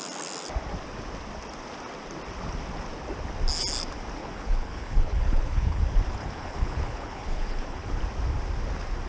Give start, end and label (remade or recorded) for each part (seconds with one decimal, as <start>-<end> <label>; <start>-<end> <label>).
0.0-4.2 recorded; 4.2-5.8 remade; 5.8-6.2 recorded; 6.2-8.0 remade; 8.0-9.1 recorded